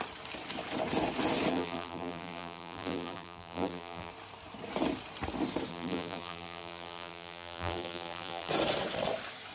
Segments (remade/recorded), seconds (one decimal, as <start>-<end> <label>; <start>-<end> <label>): 0.0-1.5 recorded; 1.5-4.1 remade; 4.1-5.7 recorded; 5.7-8.5 remade; 8.5-9.5 recorded